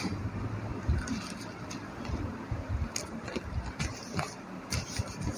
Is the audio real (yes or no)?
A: yes